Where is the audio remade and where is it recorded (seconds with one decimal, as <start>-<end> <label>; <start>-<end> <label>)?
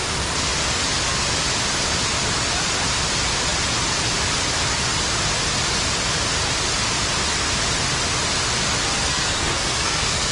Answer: 0.0-9.1 recorded; 9.1-10.3 remade